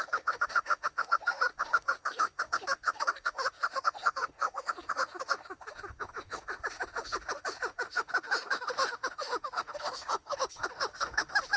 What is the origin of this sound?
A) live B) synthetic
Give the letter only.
B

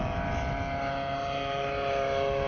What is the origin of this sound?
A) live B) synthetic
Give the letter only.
A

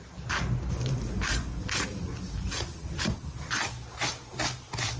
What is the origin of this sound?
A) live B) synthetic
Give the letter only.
A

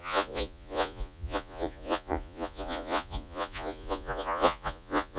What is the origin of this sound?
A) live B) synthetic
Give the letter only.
B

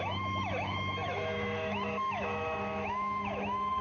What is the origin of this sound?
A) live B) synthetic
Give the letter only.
B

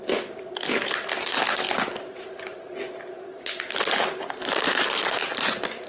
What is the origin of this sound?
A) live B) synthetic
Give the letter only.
A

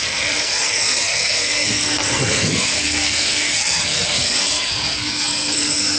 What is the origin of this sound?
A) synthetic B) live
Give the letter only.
A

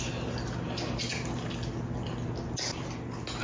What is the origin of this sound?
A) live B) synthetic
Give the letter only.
A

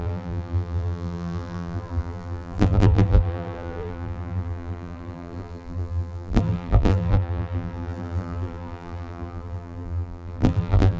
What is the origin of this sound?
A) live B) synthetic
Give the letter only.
B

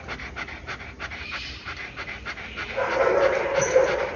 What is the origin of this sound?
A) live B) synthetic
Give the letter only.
A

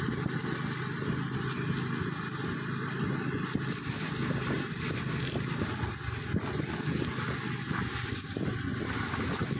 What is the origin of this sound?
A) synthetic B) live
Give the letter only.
B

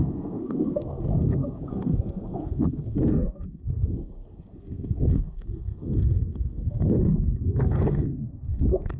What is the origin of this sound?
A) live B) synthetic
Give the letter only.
B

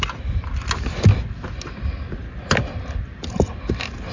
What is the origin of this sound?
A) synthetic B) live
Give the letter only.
B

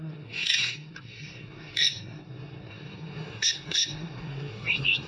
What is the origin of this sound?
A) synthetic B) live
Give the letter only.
A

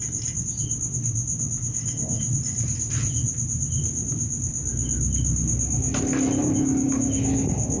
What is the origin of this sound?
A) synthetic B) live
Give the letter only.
B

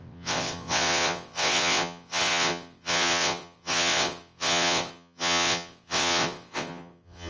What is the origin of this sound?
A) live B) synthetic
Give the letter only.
B